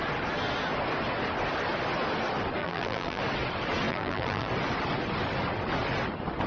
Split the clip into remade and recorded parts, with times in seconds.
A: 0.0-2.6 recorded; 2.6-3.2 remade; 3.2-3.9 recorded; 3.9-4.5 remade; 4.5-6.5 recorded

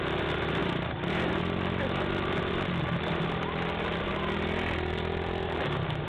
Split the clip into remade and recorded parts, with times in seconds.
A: 0.0-0.6 recorded; 0.6-1.4 remade; 1.4-6.1 recorded

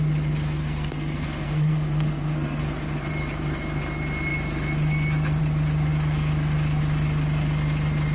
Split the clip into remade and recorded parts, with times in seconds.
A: 0.0-0.6 recorded; 0.6-2.6 remade; 2.6-8.1 recorded

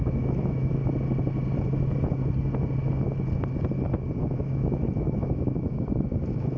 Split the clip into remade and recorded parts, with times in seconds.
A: 0.0-0.8 remade; 0.8-4.2 recorded; 4.2-6.6 remade

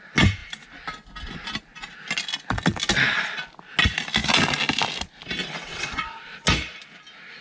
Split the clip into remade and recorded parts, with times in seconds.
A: 0.0-5.7 recorded; 5.7-6.2 remade; 6.2-7.4 recorded